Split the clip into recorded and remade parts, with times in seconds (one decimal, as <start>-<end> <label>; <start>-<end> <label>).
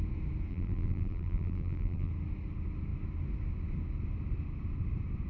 0.0-0.5 recorded; 0.5-2.1 remade; 2.1-5.3 recorded